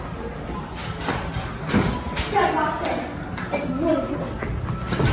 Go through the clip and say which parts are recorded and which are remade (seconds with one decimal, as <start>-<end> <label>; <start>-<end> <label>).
0.0-5.1 recorded